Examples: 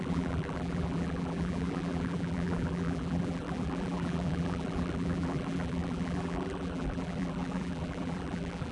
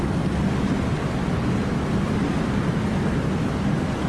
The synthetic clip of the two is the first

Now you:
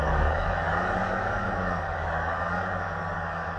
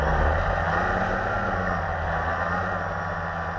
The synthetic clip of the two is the first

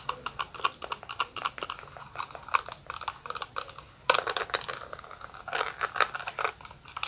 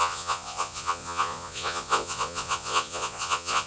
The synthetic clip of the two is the second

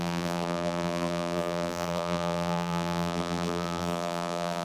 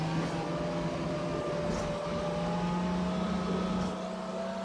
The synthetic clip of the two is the first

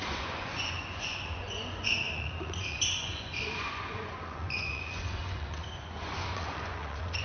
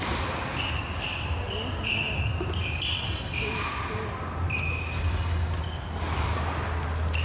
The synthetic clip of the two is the first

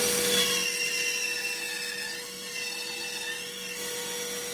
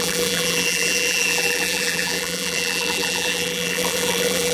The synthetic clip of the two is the second